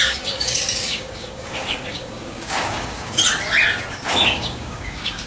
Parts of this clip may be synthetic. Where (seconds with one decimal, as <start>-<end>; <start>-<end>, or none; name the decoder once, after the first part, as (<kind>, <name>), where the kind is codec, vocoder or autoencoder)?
0.0-3.2 (codec, DAC); 3.9-5.3